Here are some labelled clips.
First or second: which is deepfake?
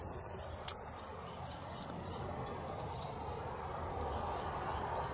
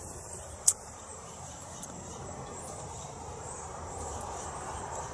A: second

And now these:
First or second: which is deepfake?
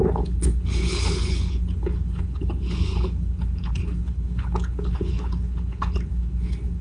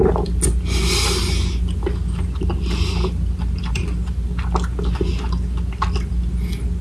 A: first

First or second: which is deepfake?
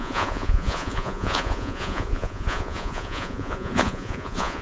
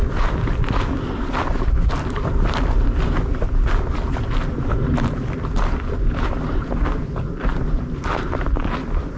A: first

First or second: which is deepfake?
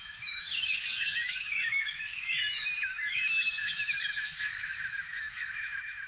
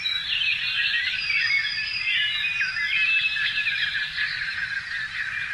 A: first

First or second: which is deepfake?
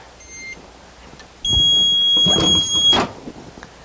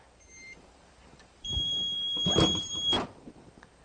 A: second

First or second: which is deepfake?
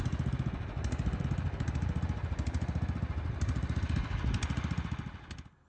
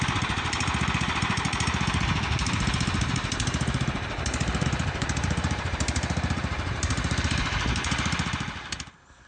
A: second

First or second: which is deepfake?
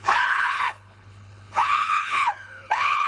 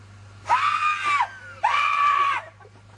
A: first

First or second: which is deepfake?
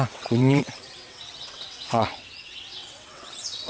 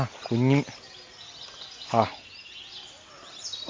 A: first